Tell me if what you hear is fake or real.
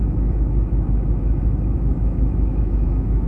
fake